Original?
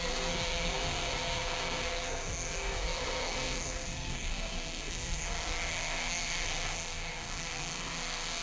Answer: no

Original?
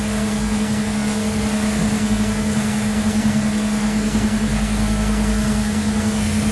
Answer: no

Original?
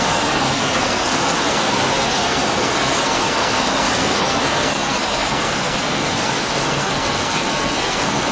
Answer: no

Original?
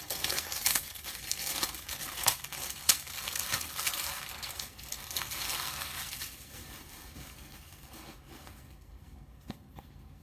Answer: no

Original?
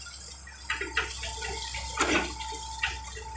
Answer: yes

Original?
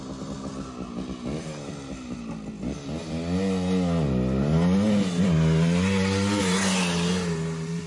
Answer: yes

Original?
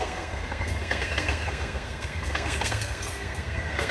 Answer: no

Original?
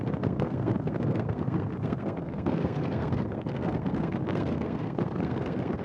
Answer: no